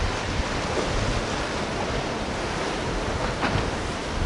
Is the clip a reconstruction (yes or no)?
no